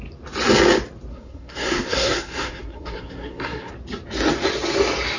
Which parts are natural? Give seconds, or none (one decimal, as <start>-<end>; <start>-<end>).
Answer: 0.0-1.1; 3.7-5.2